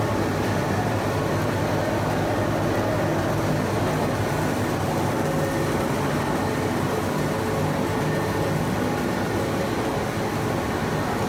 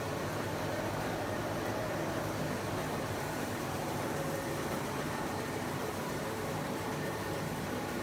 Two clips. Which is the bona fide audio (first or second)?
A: first